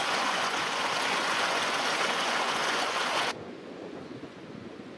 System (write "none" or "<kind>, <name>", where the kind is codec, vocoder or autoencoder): vocoder, Vocos